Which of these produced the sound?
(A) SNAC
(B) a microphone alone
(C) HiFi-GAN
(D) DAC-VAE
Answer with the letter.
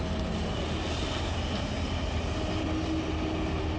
B